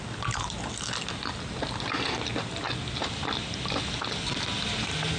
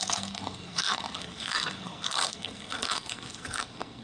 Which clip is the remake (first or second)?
second